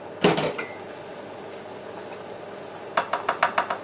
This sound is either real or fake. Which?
real